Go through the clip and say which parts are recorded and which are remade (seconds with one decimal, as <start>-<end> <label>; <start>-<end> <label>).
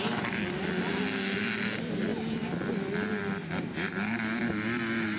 0.0-5.2 recorded